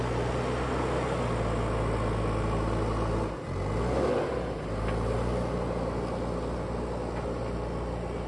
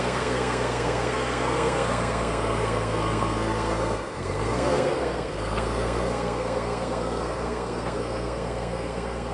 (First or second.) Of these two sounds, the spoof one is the second